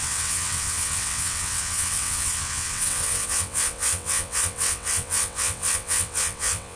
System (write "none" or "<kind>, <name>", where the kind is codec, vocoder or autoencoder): vocoder, WaveNeXt